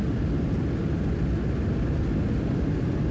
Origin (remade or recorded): recorded